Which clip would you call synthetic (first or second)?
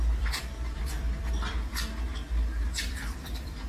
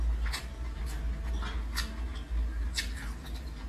first